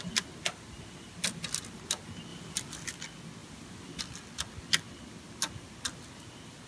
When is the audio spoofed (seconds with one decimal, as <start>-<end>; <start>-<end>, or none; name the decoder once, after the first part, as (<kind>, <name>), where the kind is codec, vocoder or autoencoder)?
none